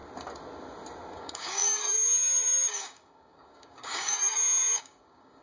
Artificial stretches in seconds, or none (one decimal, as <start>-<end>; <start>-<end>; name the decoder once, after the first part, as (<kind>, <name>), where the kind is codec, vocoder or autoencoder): 1.2-5.4 (codec, DAC)